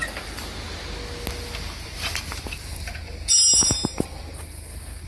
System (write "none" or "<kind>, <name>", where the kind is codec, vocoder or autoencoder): none